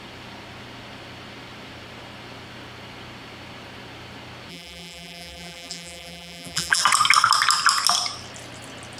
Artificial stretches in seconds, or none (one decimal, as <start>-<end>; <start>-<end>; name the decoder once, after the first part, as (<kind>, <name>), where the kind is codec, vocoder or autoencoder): 4.5-6.8 (vocoder, BigVGAN v2)